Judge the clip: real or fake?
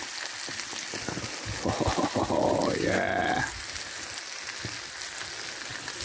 real